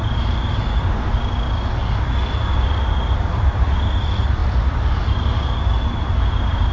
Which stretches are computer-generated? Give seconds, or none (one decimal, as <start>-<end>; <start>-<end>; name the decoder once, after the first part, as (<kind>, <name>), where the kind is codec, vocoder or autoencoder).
none